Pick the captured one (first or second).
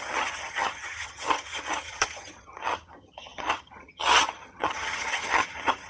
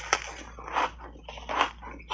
second